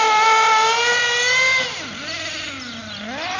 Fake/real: real